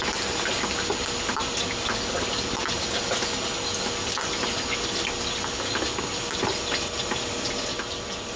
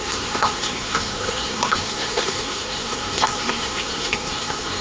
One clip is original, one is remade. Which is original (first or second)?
first